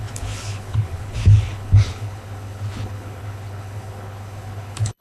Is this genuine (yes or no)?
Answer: no